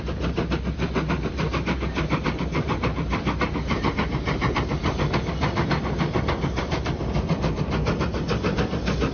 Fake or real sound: fake